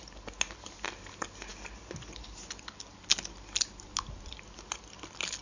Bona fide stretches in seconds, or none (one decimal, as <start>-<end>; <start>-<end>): 0.0-5.4